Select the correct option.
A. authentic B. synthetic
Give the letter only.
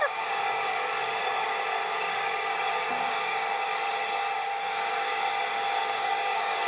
B